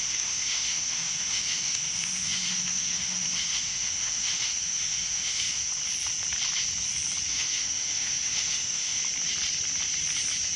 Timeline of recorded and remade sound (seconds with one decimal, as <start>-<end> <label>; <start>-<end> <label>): 0.0-5.7 remade; 5.7-7.3 recorded; 7.3-9.0 remade; 9.0-10.6 recorded